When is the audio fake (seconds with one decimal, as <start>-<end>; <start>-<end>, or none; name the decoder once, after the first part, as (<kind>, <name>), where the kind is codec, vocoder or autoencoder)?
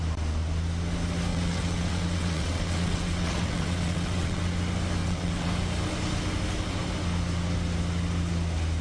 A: 1.3-4.4 (vocoder, WaveNeXt); 5.0-5.5